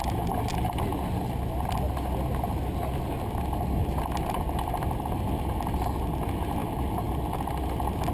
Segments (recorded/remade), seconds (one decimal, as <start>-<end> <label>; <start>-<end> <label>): 0.0-8.1 recorded